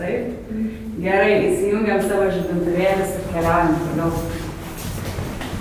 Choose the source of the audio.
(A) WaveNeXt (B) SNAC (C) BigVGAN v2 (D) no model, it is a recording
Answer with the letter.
D